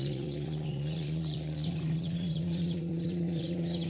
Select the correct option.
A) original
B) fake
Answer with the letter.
B